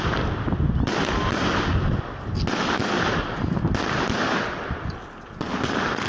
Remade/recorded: recorded